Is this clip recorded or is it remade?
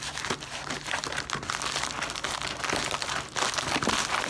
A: recorded